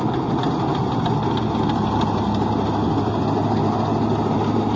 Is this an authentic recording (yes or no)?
yes